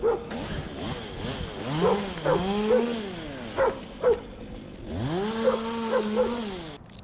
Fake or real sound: real